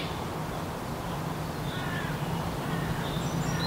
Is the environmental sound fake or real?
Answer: real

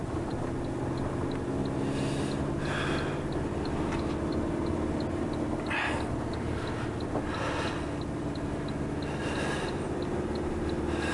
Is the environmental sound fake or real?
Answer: real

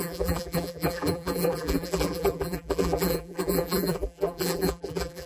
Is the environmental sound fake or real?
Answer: fake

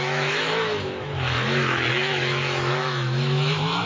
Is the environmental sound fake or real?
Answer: fake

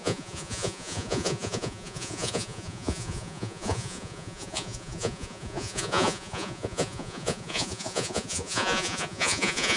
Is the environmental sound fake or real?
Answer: fake